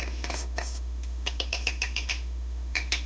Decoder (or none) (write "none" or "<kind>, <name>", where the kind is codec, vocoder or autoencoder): autoencoder, DAC-VAE